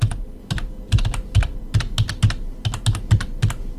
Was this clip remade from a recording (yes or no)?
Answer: no